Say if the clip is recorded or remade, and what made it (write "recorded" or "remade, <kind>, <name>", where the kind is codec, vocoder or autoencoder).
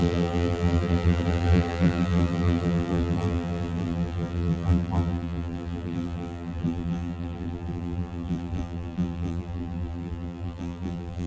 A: remade, vocoder, BigVGAN v2